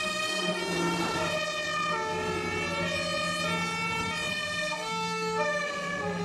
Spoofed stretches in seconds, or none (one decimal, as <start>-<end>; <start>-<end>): 0.0-0.6; 4.3-6.2